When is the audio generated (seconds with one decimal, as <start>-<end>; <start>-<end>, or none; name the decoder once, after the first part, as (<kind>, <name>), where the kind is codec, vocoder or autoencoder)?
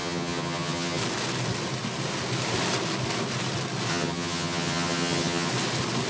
0.0-1.0 (vocoder, HiFi-GAN); 3.9-5.5